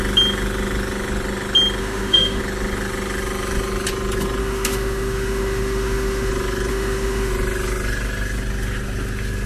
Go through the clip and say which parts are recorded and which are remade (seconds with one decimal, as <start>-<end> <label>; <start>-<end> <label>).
0.0-1.8 recorded; 1.8-2.4 remade; 2.4-4.4 recorded; 4.4-6.3 remade; 6.3-6.7 recorded; 6.7-7.3 remade; 7.3-9.5 recorded